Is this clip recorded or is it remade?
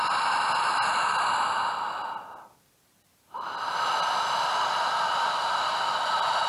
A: recorded